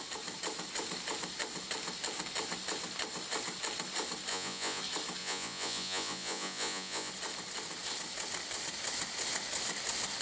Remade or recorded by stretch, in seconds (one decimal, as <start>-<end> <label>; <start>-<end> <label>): 0.0-4.3 recorded; 4.3-4.8 remade; 4.8-5.2 recorded; 5.2-7.1 remade; 7.1-10.2 recorded